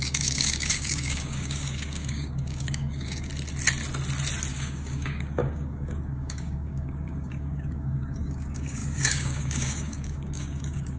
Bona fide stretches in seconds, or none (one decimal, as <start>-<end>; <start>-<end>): 3.3-4.5